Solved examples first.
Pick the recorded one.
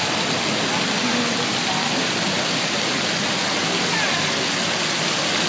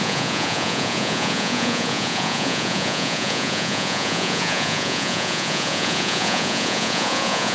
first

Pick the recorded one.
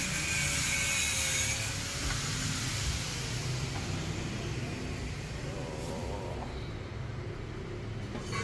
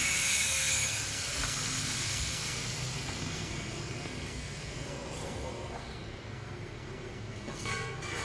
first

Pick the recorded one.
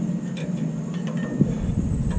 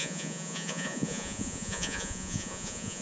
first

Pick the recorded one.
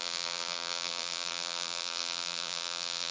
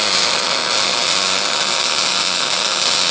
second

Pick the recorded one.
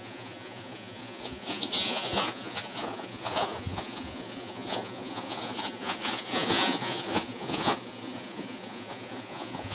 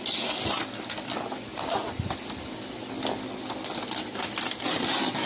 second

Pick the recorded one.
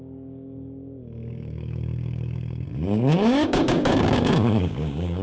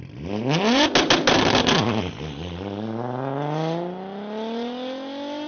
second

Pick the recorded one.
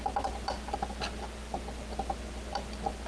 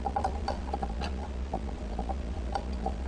first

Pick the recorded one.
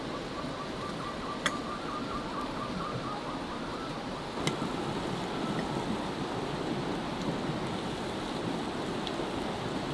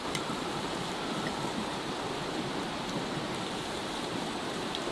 first